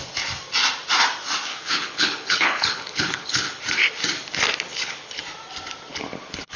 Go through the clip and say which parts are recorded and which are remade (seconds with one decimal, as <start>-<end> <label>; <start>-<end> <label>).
0.0-1.5 recorded; 1.5-3.6 remade; 3.6-4.7 recorded; 4.7-5.2 remade; 5.2-5.9 recorded; 5.9-6.6 remade